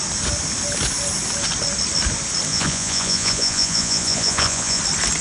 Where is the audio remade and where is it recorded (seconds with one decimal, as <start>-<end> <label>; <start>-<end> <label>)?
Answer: 0.0-2.5 recorded; 2.5-4.8 remade; 4.8-5.2 recorded